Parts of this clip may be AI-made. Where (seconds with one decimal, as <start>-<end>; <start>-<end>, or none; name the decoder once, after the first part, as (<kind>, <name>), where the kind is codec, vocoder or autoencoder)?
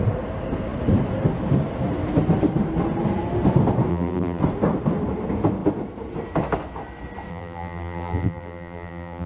3.9-4.4 (vocoder, BigVGAN v2); 7.3-9.3